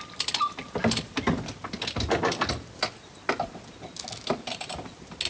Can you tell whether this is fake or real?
real